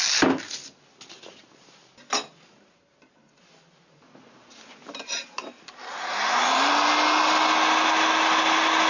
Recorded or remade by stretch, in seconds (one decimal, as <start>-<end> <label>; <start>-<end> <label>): 0.0-4.8 recorded; 4.8-5.5 remade; 5.5-6.1 recorded; 6.1-6.7 remade; 6.7-8.9 recorded